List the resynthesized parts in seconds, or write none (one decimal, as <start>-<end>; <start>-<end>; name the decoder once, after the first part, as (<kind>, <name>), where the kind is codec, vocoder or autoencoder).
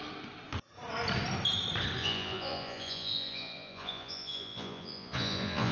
2.0-5.7 (vocoder, Vocos)